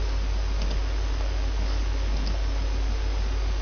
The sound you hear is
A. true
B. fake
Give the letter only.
A